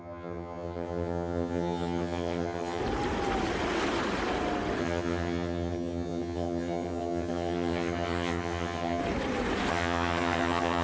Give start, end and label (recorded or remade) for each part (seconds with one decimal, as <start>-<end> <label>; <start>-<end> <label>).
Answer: 0.0-2.8 remade; 2.8-4.8 recorded; 4.8-9.0 remade; 9.0-9.7 recorded; 9.7-10.8 remade